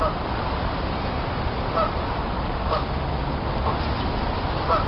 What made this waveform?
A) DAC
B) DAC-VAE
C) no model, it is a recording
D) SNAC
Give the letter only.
C